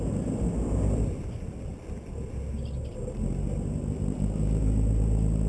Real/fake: real